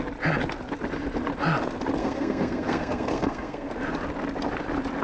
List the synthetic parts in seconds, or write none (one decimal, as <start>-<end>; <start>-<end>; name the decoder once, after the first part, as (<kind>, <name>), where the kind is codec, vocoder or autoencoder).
2.0-3.7 (codec, SNAC)